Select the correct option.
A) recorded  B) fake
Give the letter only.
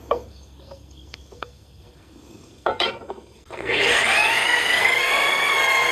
B